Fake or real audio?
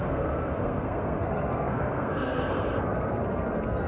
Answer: fake